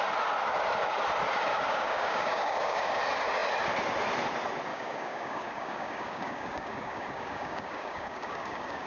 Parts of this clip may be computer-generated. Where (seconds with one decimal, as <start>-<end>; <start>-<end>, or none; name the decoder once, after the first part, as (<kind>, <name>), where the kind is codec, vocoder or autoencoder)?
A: 1.5-3.0 (codec, DAC); 4.7-8.9